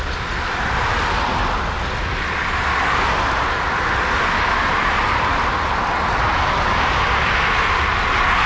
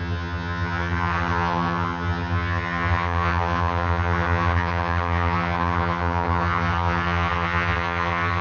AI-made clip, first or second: second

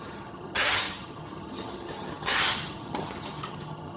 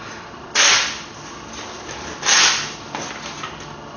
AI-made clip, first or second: first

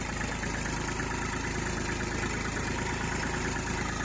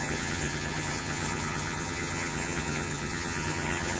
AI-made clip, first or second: second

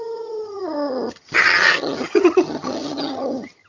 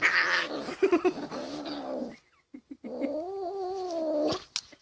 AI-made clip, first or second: first